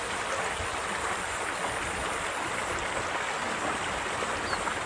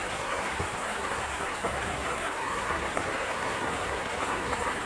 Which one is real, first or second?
first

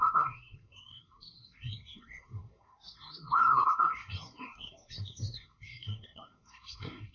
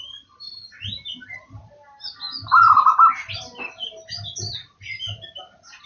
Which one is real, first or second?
second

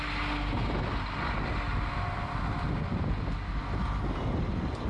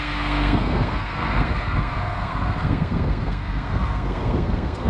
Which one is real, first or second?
first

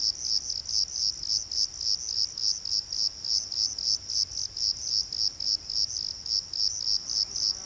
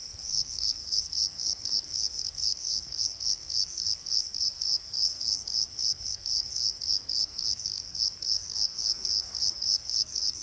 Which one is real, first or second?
first